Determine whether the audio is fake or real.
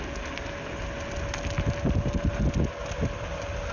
real